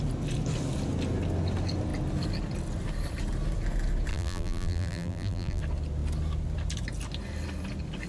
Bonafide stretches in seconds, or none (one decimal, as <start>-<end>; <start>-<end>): 0.0-4.1; 5.6-8.1